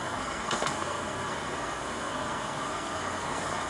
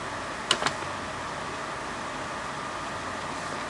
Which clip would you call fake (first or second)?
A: first